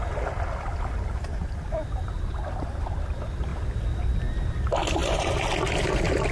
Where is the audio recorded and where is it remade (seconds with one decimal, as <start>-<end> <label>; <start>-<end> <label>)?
0.0-1.4 recorded; 1.4-2.7 remade; 2.7-3.5 recorded; 3.5-4.0 remade; 4.0-6.3 recorded